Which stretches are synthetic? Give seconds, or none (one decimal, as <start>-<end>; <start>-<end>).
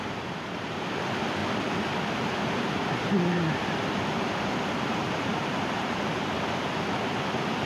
0.0-1.4; 2.2-7.7